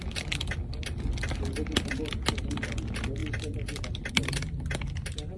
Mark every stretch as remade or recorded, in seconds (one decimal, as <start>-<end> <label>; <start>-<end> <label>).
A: 0.0-5.4 recorded